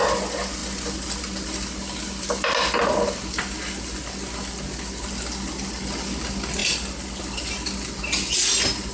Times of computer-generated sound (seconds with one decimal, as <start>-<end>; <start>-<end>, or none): none